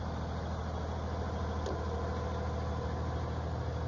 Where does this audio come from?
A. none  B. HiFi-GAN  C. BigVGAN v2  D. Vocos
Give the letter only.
A